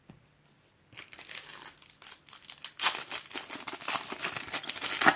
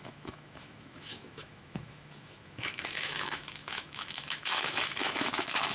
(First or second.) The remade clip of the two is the second